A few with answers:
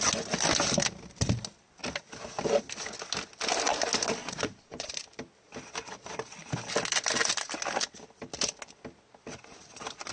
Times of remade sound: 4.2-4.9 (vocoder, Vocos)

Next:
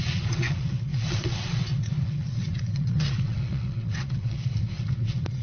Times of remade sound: 0.0-5.4 (vocoder, WaveNeXt)

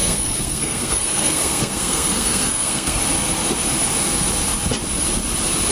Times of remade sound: 0.0-3.0 (codec, SNAC)

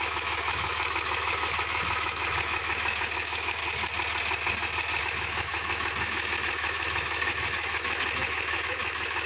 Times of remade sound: 0.0-3.6 (autoencoder, DAC-VAE); 5.0-9.3

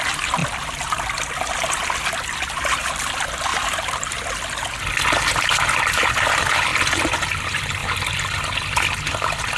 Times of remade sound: 0.0-0.4 (vocoder, BigVGAN v2); 2.6-6.7; 7.2-9.6

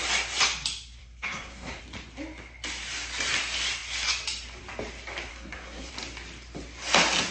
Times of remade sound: 1.0-1.8 (codec, SNAC); 5.3-5.9

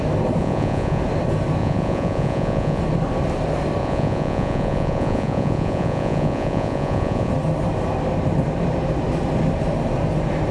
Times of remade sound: 0.4-1.0 (vocoder, Vocos); 1.6-2.8; 3.8-7.3